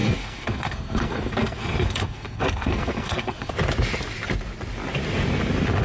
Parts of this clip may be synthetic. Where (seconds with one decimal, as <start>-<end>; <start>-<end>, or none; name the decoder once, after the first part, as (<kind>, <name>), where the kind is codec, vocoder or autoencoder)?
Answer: 0.0-3.5 (codec, SNAC)